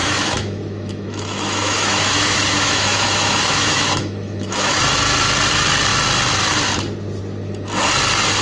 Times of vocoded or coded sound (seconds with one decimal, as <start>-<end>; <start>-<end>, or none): 0.0-4.8